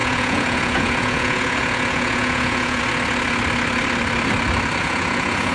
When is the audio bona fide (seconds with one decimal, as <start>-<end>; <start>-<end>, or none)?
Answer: 2.8-4.8